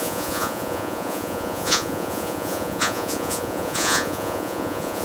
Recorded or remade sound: remade